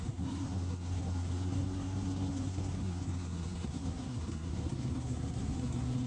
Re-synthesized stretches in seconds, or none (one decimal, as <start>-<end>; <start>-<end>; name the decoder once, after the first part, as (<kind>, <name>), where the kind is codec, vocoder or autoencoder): 0.0-6.1 (codec, SNAC)